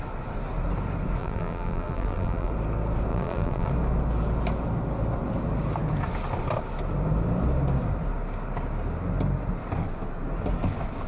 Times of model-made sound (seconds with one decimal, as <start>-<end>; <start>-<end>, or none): 1.2-2.5; 3.1-3.7